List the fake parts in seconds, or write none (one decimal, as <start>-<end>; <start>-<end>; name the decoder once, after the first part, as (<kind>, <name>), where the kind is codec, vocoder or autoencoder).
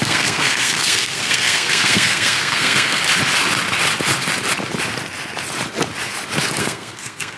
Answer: 0.0-3.0 (codec, SNAC); 6.6-7.4